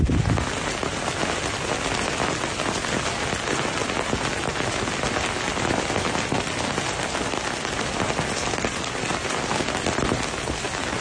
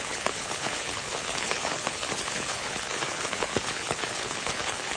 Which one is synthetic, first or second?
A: second